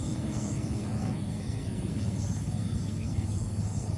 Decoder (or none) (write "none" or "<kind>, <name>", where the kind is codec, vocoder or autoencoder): codec, SNAC